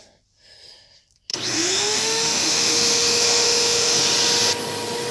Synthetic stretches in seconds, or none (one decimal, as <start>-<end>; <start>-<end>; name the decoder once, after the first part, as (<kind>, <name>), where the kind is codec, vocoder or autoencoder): 1.3-4.0 (autoencoder, DAC-VAE)